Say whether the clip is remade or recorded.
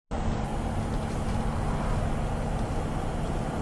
recorded